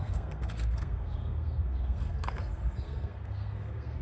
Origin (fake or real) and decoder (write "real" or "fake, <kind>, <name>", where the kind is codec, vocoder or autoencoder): fake, codec, SNAC